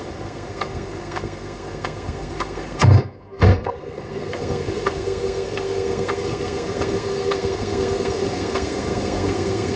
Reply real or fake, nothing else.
fake